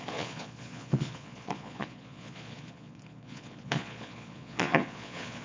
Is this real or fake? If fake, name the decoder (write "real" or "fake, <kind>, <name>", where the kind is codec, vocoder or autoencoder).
fake, vocoder, Vocos